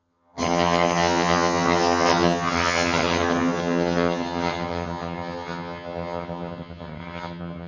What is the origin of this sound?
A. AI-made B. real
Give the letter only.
A